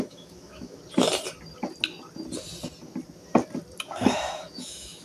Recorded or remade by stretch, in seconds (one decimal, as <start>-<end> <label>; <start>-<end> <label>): 0.0-0.8 remade; 0.8-3.8 recorded; 3.8-5.0 remade